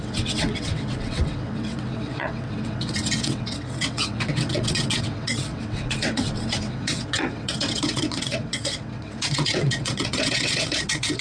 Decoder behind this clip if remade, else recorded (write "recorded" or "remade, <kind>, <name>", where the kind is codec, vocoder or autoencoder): remade, vocoder, WaveNeXt